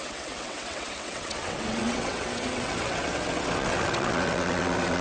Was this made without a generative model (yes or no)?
no